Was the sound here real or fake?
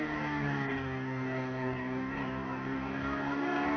fake